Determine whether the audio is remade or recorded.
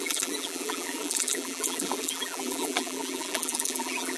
remade